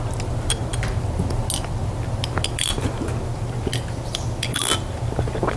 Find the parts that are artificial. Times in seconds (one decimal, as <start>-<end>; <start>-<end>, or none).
none